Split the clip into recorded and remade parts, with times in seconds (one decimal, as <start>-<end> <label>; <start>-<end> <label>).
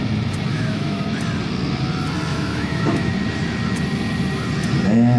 0.0-0.5 recorded; 0.5-1.0 remade; 1.0-2.3 recorded; 2.3-3.1 remade; 3.1-5.2 recorded